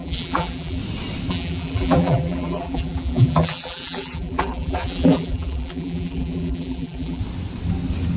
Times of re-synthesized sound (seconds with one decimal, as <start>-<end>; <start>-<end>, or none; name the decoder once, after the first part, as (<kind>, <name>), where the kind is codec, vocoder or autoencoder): 0.0-0.8 (vocoder, BigVGAN v2); 1.3-7.2

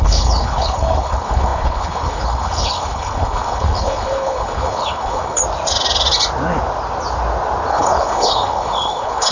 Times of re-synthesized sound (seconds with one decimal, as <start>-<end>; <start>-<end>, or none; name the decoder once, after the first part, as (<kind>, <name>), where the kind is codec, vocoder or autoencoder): 0.0-5.4 (codec, HILCodec); 7.7-9.3

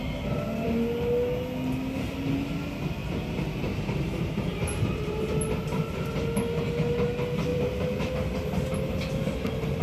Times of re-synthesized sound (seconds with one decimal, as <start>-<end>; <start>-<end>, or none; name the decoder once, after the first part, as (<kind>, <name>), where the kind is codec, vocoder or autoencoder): 3.0-5.3 (vocoder, BigVGAN v2); 7.5-8.1

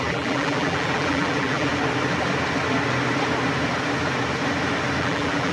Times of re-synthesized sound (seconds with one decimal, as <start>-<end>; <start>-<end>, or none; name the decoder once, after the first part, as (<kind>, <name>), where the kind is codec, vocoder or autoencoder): 0.0-1.7 (vocoder, BigVGAN v2); 5.0-5.5

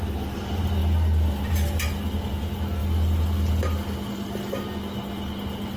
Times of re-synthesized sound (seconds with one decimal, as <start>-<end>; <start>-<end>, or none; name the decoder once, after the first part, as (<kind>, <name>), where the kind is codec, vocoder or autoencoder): none

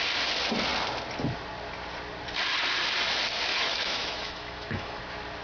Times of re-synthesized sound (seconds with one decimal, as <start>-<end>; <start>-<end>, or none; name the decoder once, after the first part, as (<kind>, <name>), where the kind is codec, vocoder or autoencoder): 3.5-5.0 (autoencoder, DAC-VAE)

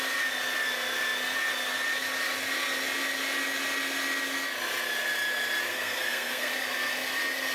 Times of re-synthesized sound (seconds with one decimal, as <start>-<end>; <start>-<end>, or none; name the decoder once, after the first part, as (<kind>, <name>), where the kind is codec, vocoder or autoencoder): 5.7-6.5 (codec, SNAC)